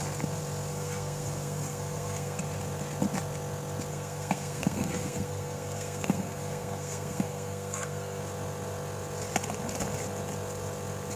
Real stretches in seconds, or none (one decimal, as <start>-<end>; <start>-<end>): 0.0-0.7; 2.4-3.9; 8.2-11.2